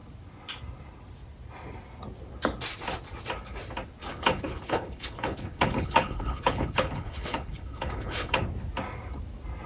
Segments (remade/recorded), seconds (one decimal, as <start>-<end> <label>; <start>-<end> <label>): 0.0-4.1 recorded; 4.1-8.4 remade; 8.4-9.7 recorded